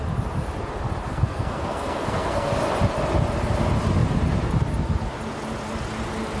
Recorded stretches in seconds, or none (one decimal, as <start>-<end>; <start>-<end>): 0.0-1.0; 2.5-6.4